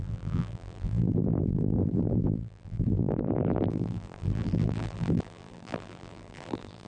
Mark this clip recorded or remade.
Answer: remade